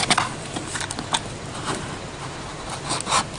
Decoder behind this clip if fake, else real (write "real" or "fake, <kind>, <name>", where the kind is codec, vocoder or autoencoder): real